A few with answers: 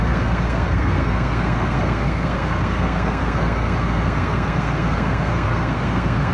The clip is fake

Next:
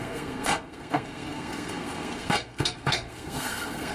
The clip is fake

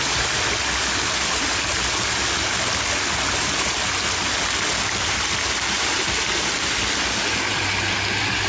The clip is real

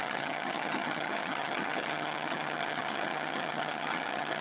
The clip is fake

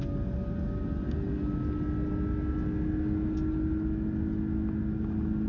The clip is real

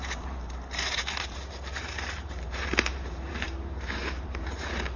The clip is fake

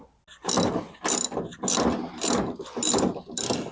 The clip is real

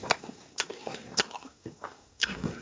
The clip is fake